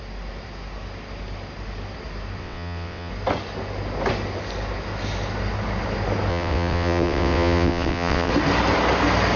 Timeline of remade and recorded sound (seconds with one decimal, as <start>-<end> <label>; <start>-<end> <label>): 0.0-2.4 recorded; 2.4-3.1 remade; 3.1-6.3 recorded; 6.3-8.3 remade; 8.3-9.4 recorded